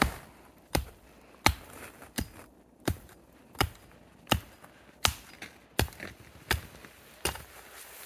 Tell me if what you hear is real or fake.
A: real